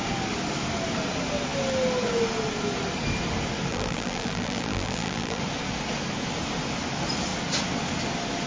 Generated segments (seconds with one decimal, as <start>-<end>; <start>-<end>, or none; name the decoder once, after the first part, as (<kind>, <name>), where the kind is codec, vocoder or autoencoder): 3.7-5.4 (vocoder, BigVGAN v2)